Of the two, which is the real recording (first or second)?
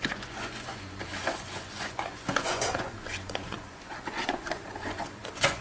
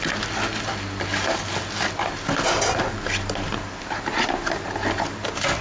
second